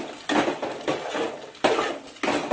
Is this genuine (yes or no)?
yes